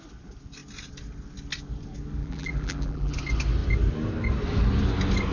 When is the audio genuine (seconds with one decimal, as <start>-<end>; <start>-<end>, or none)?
0.0-2.2; 3.1-5.3